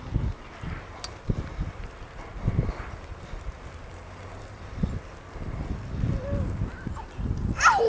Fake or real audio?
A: real